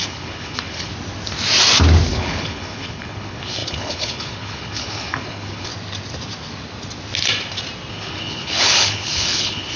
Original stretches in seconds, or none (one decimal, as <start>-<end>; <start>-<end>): 0.9-2.1; 5.7-7.9